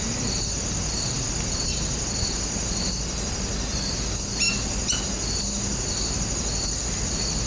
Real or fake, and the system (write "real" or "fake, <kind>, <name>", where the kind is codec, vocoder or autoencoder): real